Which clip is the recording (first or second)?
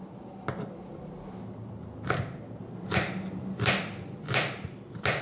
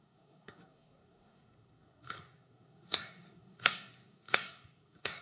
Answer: first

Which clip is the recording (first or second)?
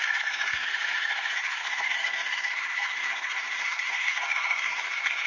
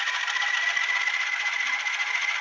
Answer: second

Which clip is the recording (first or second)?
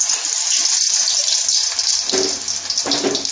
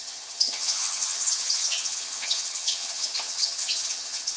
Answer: first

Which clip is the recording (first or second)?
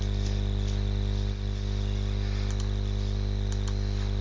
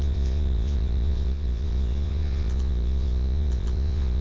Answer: first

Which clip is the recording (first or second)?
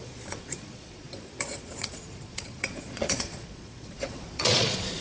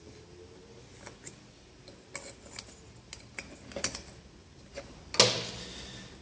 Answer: second